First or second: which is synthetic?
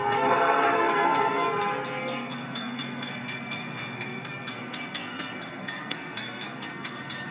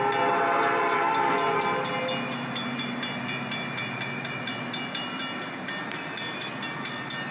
first